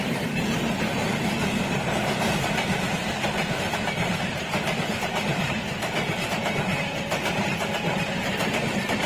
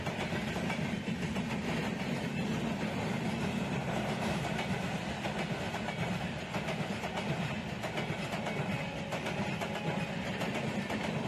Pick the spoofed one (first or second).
first